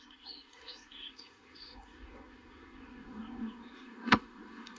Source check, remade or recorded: remade